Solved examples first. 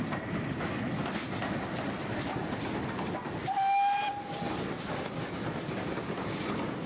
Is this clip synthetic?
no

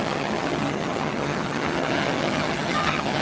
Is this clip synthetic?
yes